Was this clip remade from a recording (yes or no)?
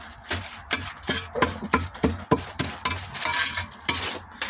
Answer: no